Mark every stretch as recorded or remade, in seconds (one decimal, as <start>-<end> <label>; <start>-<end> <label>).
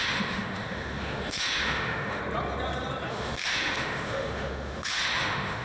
0.0-2.2 remade; 2.2-3.1 recorded; 3.1-5.6 remade